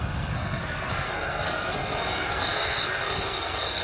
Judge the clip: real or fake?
fake